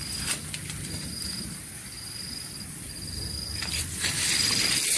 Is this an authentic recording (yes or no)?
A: yes